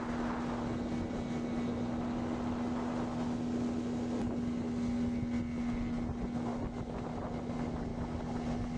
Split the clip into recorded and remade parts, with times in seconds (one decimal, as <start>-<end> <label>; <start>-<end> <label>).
0.0-8.8 recorded